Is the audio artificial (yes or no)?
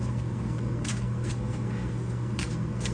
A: yes